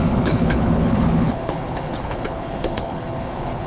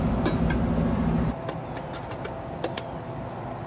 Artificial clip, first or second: first